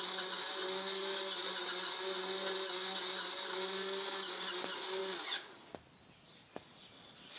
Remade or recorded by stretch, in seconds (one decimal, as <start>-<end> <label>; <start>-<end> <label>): 0.0-7.4 recorded